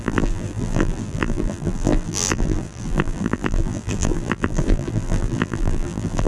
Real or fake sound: fake